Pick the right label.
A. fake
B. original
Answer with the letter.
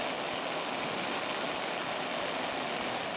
B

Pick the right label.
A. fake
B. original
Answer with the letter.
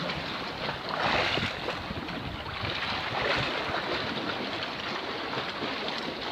B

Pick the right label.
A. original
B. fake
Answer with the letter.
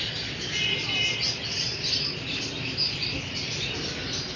A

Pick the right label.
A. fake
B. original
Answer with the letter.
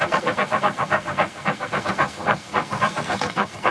A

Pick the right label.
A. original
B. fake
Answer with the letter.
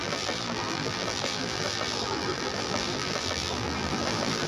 B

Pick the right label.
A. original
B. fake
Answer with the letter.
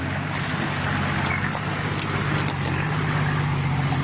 A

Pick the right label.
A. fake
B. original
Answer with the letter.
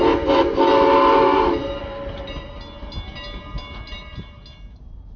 B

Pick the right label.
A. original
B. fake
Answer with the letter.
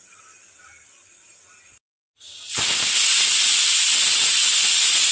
A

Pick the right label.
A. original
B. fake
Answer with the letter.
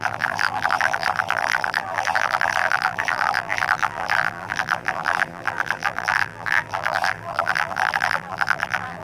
B